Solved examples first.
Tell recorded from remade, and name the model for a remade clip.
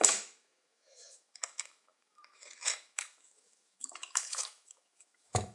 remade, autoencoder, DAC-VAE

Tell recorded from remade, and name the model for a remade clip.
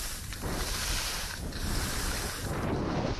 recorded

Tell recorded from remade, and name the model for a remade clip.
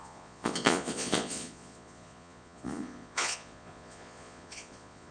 remade, vocoder, Vocos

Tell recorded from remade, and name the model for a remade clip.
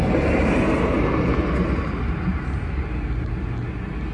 recorded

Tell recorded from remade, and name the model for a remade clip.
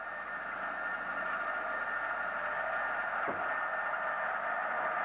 recorded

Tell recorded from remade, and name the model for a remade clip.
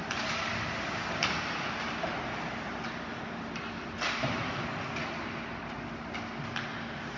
recorded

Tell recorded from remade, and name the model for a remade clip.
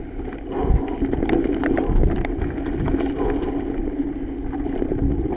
recorded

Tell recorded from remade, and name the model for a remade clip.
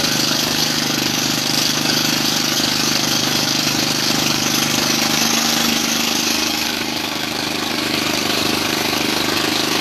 remade, codec, DAC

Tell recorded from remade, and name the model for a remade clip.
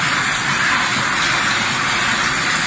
recorded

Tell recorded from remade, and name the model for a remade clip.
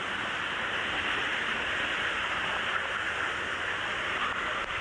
recorded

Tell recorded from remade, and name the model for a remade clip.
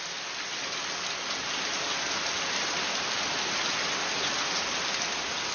recorded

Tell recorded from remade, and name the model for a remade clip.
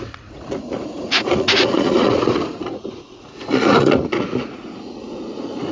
remade, vocoder, Vocos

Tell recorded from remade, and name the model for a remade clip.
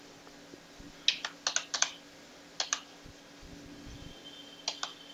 recorded